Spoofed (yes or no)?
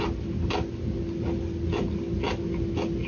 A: no